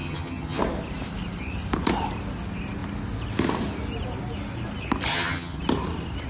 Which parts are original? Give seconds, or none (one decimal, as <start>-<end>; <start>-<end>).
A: 0.6-5.1; 5.6-6.3